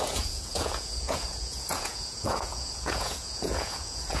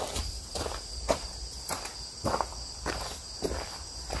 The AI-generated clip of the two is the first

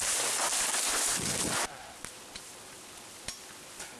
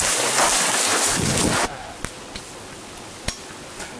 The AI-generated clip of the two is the first